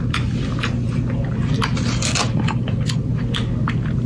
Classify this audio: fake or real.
real